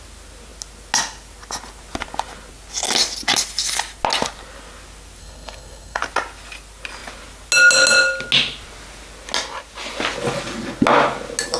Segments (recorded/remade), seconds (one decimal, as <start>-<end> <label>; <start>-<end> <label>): 0.0-5.2 recorded; 5.2-6.0 remade; 6.0-11.6 recorded